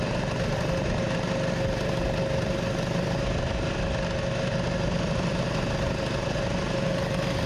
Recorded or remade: recorded